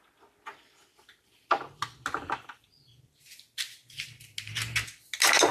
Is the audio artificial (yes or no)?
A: no